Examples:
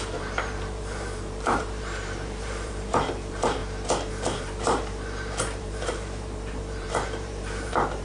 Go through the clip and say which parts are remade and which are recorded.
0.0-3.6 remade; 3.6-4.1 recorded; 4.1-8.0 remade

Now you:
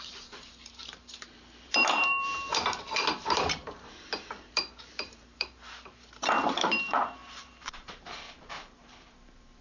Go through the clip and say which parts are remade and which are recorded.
0.0-9.6 remade

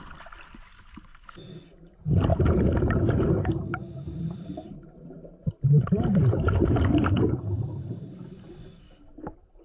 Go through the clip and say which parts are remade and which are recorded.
0.0-2.3 recorded; 2.3-3.1 remade; 3.1-3.9 recorded; 3.9-4.7 remade; 4.7-5.4 recorded; 5.4-8.1 remade; 8.1-9.6 recorded

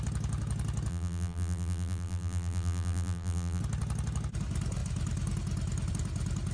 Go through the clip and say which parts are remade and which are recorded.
0.0-0.9 recorded; 0.9-3.6 remade; 3.6-6.5 recorded

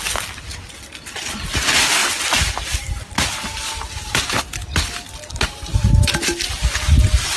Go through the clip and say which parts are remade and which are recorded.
0.0-7.4 recorded

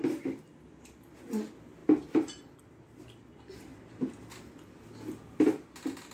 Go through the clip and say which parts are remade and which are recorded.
0.0-1.8 recorded; 1.8-2.6 remade; 2.6-3.7 recorded; 3.7-4.8 remade; 4.8-6.1 recorded

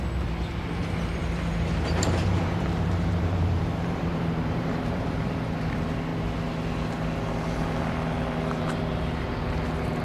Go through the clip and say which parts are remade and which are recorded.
0.0-1.2 recorded; 1.2-5.3 remade; 5.3-10.0 recorded